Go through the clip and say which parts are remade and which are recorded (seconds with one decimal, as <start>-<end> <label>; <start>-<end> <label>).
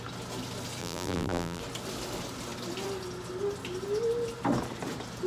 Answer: 0.0-0.8 recorded; 0.8-1.6 remade; 1.6-5.3 recorded